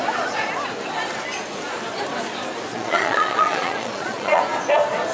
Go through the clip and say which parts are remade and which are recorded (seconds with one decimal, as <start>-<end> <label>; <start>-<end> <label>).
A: 0.0-2.7 recorded; 2.7-4.4 remade; 4.4-5.1 recorded